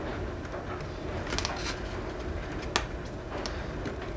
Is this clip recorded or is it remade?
recorded